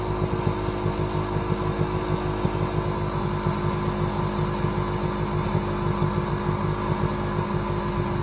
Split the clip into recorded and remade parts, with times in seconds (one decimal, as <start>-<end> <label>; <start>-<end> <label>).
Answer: 0.0-8.2 recorded